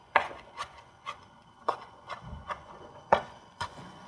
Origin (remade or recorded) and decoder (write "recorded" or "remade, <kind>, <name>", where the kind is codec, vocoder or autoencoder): remade, vocoder, Vocos